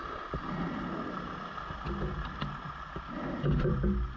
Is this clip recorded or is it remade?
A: recorded